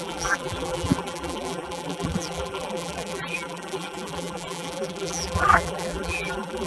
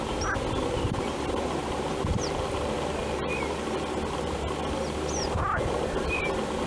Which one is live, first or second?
second